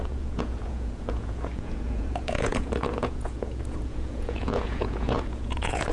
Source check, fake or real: fake